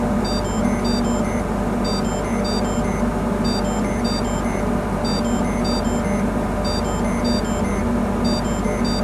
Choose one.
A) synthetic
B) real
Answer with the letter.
B